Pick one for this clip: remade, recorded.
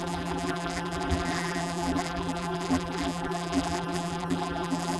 remade